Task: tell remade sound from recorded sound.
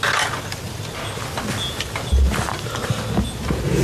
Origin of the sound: recorded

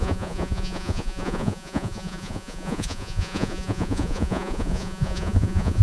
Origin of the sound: remade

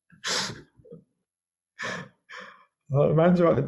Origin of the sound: remade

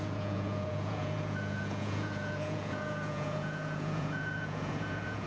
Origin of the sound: remade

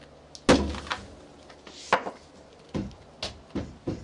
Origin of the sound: recorded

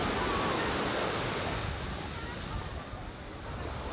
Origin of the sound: recorded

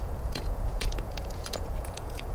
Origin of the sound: remade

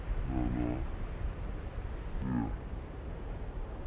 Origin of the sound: recorded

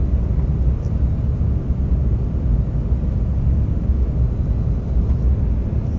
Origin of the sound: recorded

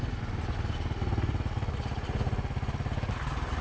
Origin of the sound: recorded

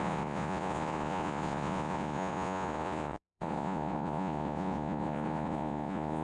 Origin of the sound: remade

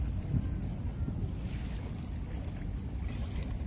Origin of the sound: recorded